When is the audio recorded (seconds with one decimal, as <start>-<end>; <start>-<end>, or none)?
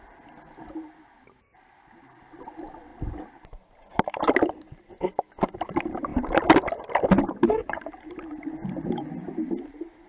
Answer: 0.0-6.1; 6.7-10.1